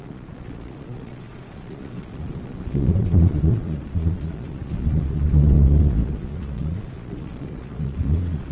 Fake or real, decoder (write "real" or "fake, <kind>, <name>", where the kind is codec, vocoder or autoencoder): fake, vocoder, Vocos